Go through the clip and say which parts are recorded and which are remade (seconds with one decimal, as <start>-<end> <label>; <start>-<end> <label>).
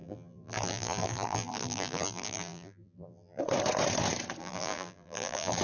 0.0-3.4 remade; 3.4-4.4 recorded; 4.4-5.6 remade